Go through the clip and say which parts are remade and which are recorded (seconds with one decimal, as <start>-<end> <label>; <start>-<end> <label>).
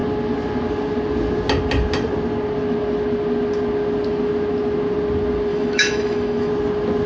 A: 0.0-5.5 recorded; 5.5-6.5 remade; 6.5-7.1 recorded